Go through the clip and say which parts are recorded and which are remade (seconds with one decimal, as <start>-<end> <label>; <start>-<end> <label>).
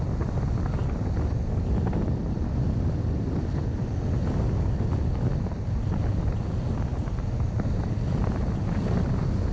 0.0-9.5 recorded